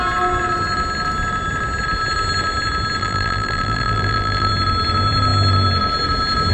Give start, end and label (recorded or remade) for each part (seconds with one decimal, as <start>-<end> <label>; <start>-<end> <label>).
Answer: 0.0-3.0 recorded; 3.0-4.5 remade; 4.5-6.5 recorded